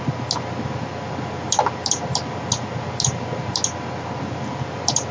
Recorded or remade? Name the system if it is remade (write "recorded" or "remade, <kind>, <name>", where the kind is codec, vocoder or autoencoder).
recorded